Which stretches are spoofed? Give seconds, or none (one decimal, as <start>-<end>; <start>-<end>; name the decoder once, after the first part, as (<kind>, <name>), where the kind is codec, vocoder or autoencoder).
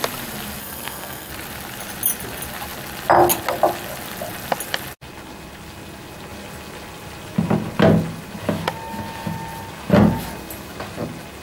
0.6-1.3 (codec, SNAC)